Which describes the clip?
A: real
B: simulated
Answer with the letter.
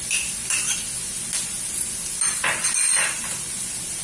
A